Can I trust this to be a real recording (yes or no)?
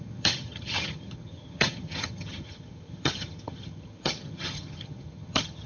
no